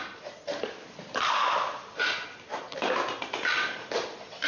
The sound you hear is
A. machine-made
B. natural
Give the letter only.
A